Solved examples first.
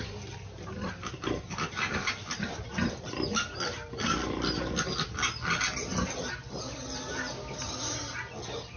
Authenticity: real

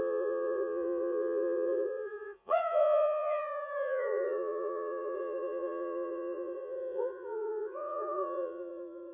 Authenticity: fake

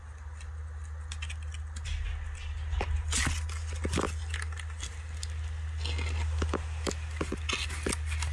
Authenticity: real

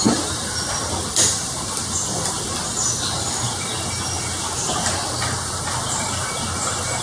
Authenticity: real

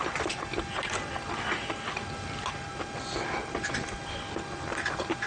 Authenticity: real